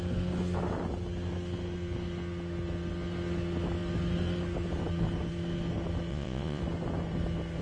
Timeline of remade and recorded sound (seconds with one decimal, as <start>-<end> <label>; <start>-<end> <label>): 0.0-6.1 recorded; 6.1-6.6 remade; 6.6-7.6 recorded